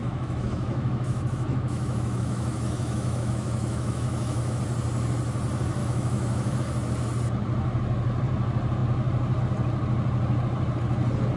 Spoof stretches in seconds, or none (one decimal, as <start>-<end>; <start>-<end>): 0.0-4.6; 5.8-6.6